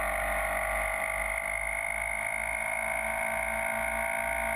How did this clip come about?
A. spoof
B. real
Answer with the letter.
B